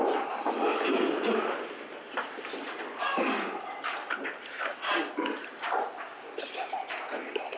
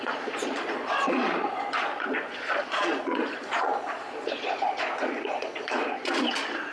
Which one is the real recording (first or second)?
first